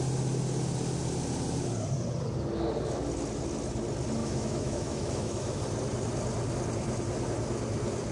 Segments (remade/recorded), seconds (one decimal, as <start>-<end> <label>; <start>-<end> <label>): 0.0-4.2 recorded; 4.2-5.6 remade; 5.6-8.1 recorded